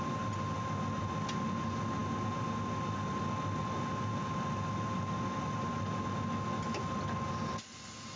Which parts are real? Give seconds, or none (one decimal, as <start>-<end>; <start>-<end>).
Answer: 0.0-8.2